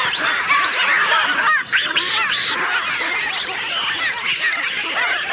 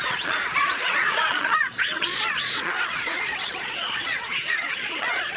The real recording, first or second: first